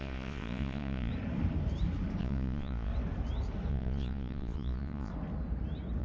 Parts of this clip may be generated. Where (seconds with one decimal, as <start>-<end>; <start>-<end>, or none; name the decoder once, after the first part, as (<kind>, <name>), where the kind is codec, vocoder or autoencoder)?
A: 0.0-1.1 (vocoder, Vocos); 2.2-2.9; 3.7-5.1